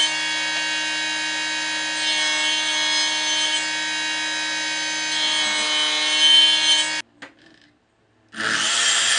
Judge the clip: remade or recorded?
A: recorded